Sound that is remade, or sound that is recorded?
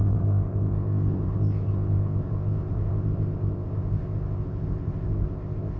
remade